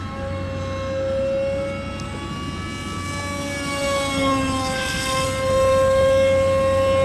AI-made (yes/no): no